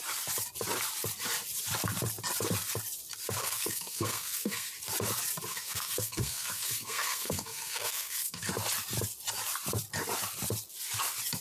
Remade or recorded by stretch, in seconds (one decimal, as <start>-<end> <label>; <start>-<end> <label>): 0.0-3.4 recorded; 3.4-4.7 remade; 4.7-5.5 recorded; 5.5-8.5 remade; 8.5-11.4 recorded